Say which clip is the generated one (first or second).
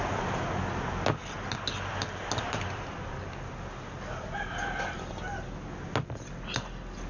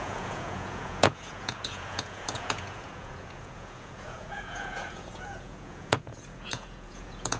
second